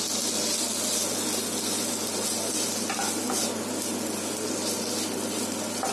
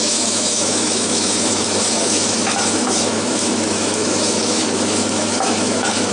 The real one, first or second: first